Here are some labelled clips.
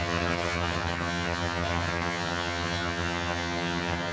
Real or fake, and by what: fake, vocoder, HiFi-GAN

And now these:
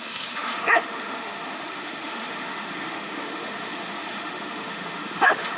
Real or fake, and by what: fake, autoencoder, DAC-VAE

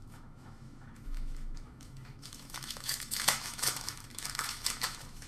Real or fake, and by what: fake, autoencoder, DAC-VAE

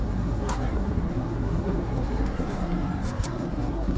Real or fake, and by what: fake, codec, SNAC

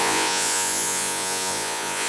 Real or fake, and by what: fake, vocoder, Vocos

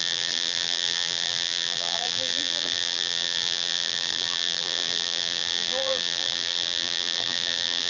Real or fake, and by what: fake, vocoder, BigVGAN v2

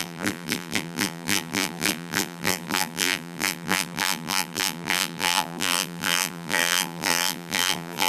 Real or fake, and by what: fake, vocoder, BigVGAN v2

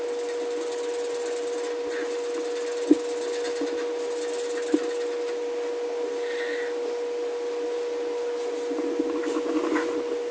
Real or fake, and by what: real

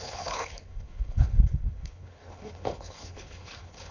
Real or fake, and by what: fake, codec, HILCodec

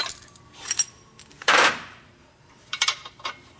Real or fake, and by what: fake, vocoder, BigVGAN v2